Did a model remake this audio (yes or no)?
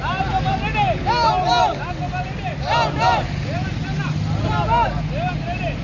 no